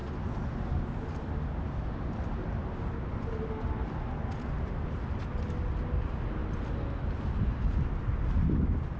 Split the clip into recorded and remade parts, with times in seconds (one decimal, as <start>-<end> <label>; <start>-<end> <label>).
0.0-9.0 recorded